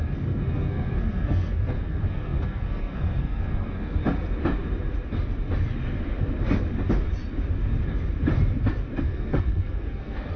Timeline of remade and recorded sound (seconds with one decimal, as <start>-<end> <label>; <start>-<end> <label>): 0.0-4.0 remade; 4.0-9.0 recorded; 9.0-10.4 remade